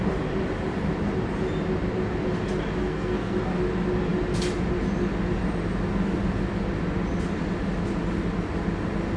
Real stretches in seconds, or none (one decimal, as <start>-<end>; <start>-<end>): 0.0-2.8; 3.4-9.2